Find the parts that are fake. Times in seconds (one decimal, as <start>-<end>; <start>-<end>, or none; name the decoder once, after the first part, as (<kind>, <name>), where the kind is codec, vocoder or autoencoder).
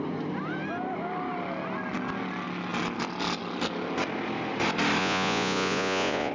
5.0-6.3 (vocoder, Vocos)